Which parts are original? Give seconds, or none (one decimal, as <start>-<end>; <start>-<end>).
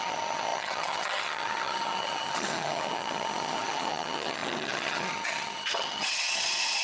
none